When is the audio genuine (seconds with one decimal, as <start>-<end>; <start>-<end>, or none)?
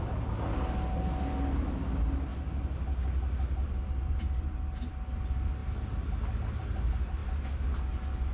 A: 0.0-8.3